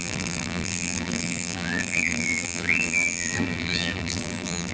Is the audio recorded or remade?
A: remade